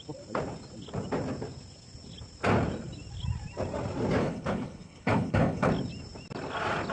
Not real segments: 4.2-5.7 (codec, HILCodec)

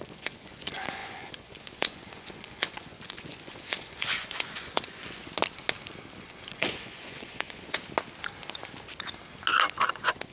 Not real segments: 0.0-5.2 (vocoder, Vocos); 6.2-7.8; 9.9-10.3

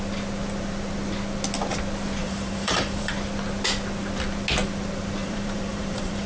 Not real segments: 2.2-3.1 (vocoder, BigVGAN v2); 5.2-6.3

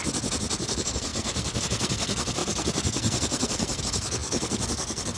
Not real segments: 0.6-5.2 (codec, SNAC)